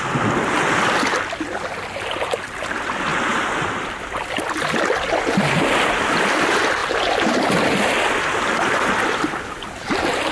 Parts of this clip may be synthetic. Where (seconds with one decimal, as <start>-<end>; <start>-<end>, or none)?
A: none